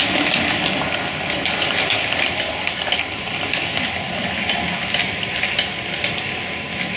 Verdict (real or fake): real